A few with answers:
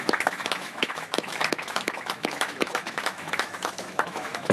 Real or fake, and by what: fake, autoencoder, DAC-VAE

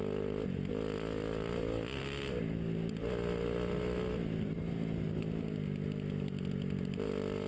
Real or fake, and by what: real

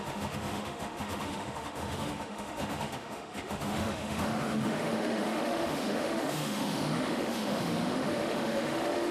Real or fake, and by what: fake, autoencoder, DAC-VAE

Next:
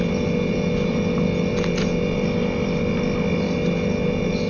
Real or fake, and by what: real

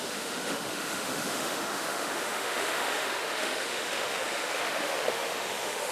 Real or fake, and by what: fake, autoencoder, DAC-VAE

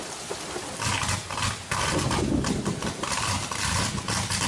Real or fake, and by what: real